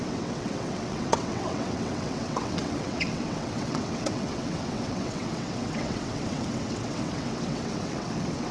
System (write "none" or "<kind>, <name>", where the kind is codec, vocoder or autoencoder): vocoder, WaveNeXt